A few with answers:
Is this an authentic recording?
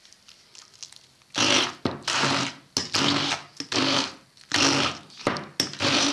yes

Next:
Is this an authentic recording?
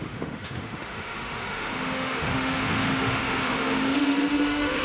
no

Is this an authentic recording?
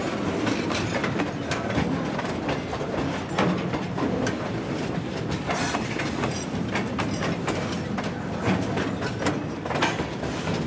yes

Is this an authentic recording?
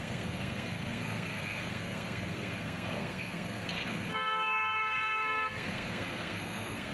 no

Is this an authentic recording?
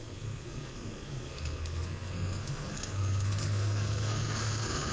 no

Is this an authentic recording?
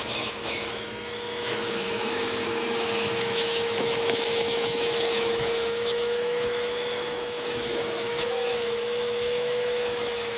no